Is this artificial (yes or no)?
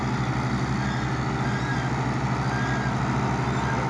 no